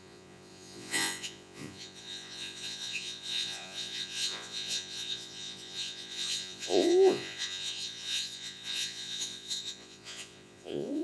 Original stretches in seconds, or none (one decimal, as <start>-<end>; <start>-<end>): none